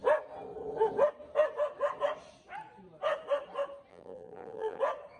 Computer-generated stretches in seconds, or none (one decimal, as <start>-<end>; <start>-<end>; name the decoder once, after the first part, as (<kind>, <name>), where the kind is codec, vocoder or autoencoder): 3.9-4.8 (vocoder, BigVGAN v2)